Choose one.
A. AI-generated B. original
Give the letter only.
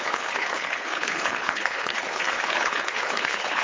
A